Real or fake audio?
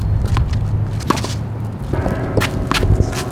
real